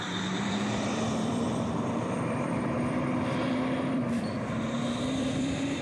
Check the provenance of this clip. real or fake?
fake